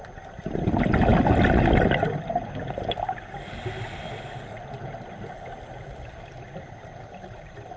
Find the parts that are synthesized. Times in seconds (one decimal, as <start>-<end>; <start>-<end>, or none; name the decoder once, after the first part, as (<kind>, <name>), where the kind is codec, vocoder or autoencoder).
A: none